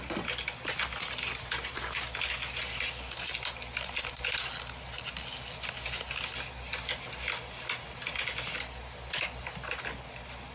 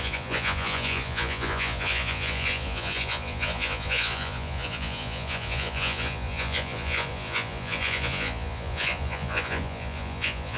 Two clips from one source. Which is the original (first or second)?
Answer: first